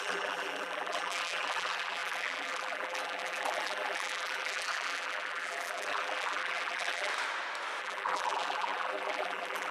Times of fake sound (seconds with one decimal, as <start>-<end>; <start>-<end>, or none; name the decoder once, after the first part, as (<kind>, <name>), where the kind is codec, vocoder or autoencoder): 0.0-7.1 (vocoder, BigVGAN v2); 7.8-9.7